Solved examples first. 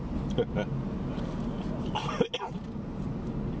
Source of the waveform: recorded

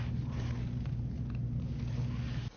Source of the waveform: recorded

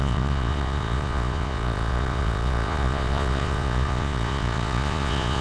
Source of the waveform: remade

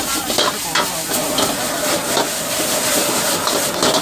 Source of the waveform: recorded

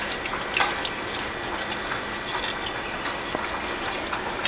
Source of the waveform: recorded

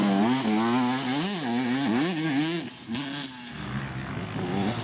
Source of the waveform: recorded